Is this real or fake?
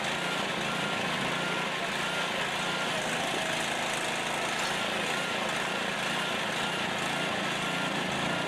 real